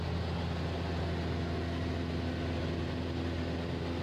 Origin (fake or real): real